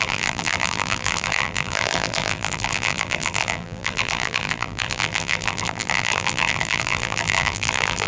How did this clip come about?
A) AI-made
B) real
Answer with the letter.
A